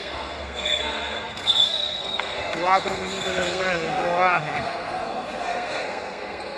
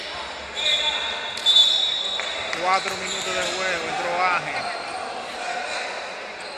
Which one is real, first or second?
second